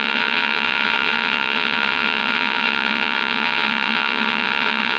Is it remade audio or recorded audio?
remade